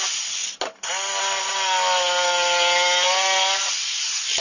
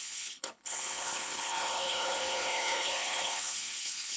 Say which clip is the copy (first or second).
second